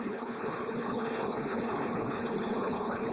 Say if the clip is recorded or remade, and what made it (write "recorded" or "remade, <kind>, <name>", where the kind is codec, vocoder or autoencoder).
remade, codec, HILCodec